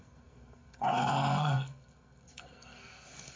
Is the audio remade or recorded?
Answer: remade